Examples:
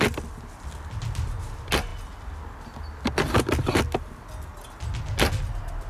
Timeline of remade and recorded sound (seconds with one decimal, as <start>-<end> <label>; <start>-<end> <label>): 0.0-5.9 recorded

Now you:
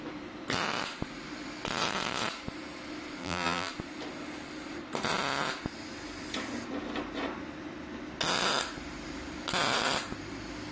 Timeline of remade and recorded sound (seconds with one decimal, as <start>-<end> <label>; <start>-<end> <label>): 0.0-3.2 recorded; 3.2-3.7 remade; 3.7-10.7 recorded

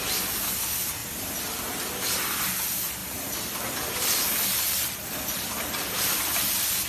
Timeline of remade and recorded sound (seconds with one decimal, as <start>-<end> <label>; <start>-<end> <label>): 0.0-1.0 recorded; 1.0-1.9 remade; 1.9-3.0 recorded; 3.0-6.9 remade

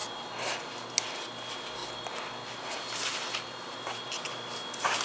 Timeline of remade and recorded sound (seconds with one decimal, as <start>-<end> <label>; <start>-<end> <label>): 0.0-1.8 recorded; 1.8-3.8 remade; 3.8-5.0 recorded